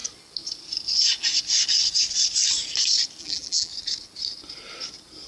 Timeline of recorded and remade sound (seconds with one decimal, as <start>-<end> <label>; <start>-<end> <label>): 0.0-3.2 recorded; 3.2-3.7 remade; 3.7-5.3 recorded

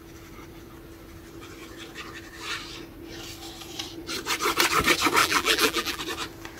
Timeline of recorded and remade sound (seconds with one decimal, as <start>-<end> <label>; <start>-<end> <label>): 0.0-5.2 recorded; 5.2-6.0 remade; 6.0-6.6 recorded

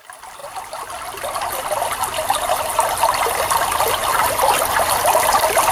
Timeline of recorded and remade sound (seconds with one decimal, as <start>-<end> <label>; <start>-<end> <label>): 0.0-5.7 recorded

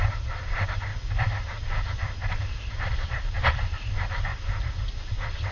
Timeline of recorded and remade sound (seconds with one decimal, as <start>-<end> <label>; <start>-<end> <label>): 0.0-0.9 remade; 0.9-2.6 recorded; 2.6-4.3 remade; 4.3-5.5 recorded

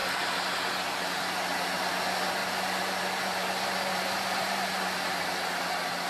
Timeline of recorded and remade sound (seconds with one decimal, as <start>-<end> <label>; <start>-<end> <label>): 0.0-0.7 remade; 0.7-2.4 recorded; 2.4-5.2 remade; 5.2-6.1 recorded

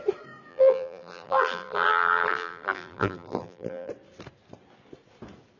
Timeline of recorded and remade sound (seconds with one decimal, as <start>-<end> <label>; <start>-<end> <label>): 0.0-0.5 recorded; 0.5-3.9 remade; 3.9-5.6 recorded